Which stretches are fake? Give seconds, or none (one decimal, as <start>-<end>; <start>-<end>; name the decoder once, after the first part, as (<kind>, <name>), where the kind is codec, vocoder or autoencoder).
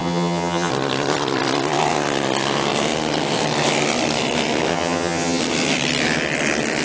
0.0-0.7 (vocoder, HiFi-GAN); 4.7-5.4